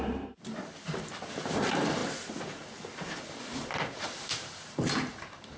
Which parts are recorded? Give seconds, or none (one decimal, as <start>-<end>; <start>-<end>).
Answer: 2.0-4.0